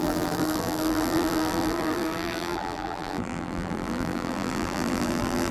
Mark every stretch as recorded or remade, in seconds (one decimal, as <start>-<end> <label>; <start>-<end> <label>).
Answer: 0.0-5.5 remade